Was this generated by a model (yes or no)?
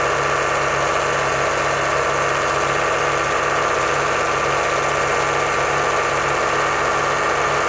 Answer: no